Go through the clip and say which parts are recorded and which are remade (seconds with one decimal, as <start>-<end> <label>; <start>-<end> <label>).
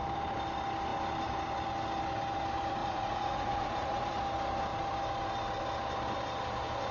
0.0-2.8 recorded; 2.8-4.2 remade; 4.2-6.9 recorded